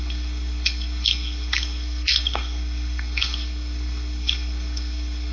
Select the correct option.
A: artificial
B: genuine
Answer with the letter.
A